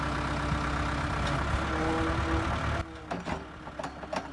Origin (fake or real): real